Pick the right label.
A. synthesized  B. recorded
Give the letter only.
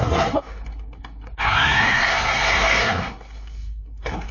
A